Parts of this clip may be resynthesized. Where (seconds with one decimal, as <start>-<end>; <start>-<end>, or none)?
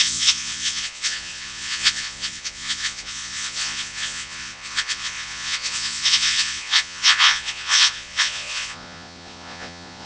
0.0-10.1